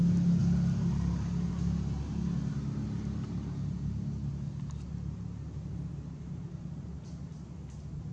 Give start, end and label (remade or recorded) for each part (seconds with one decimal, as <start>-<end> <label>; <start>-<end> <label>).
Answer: 0.0-8.1 recorded